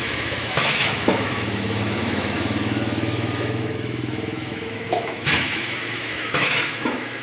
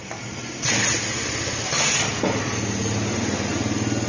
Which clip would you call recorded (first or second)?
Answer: second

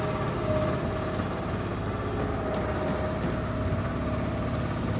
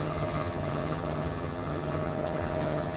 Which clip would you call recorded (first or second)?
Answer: first